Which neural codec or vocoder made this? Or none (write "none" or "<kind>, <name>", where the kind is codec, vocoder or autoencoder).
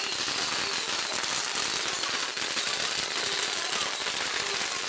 none